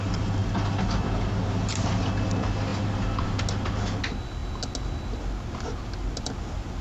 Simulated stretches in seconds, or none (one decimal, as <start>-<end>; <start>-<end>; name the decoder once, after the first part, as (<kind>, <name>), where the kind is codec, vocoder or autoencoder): none